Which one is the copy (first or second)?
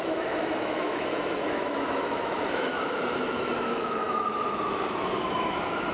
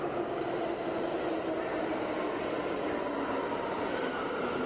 first